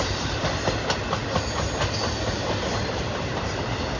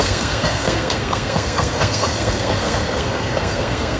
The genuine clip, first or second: first